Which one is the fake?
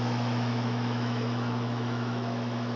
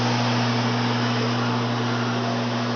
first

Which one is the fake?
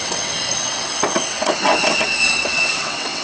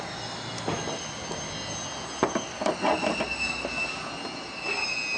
first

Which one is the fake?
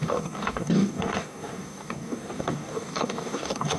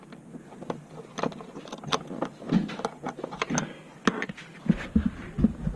first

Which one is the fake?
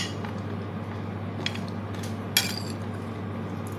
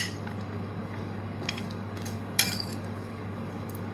second